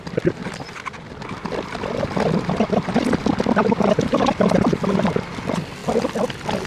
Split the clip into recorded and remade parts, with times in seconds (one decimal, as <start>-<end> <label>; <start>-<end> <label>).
0.0-0.4 recorded; 0.4-4.4 remade; 4.4-6.7 recorded